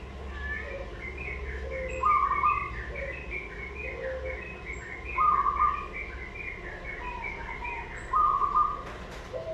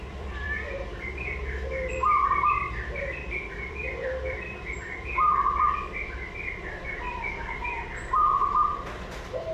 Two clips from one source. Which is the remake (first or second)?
second